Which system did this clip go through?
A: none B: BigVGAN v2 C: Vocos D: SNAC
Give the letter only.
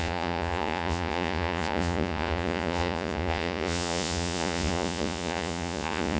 C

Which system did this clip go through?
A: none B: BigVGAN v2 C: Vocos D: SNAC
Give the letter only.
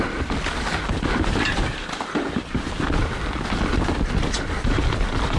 A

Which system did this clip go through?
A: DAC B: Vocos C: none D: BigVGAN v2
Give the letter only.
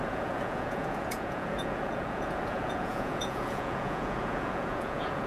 B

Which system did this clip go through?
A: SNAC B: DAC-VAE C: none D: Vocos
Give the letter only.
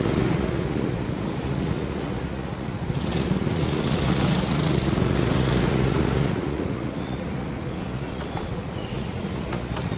D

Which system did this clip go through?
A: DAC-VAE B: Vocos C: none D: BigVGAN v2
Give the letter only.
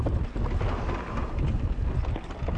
C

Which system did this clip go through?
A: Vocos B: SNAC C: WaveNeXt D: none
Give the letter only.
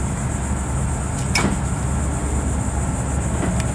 D